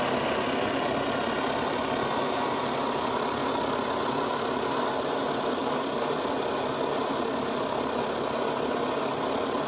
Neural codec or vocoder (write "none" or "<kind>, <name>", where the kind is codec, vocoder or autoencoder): none